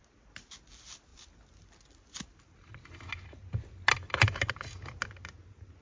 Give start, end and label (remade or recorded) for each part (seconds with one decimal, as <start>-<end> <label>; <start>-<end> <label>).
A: 0.0-5.8 recorded